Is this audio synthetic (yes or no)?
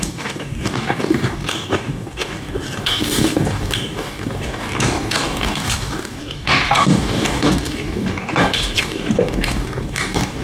yes